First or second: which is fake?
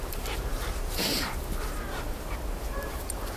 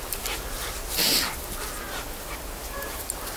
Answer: first